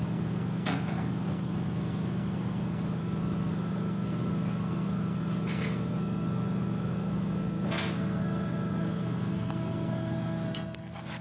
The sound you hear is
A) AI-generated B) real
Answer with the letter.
A